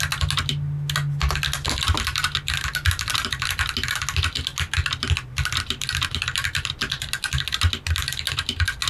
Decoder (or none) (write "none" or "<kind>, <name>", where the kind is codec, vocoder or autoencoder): none